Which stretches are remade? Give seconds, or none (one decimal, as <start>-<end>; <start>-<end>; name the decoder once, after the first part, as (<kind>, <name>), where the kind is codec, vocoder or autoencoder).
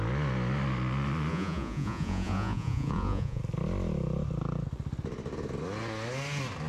1.3-3.4 (vocoder, Vocos)